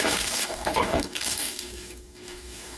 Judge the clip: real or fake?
fake